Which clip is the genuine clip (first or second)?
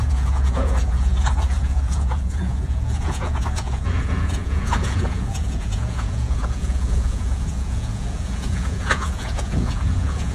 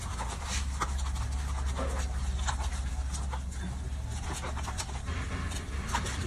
second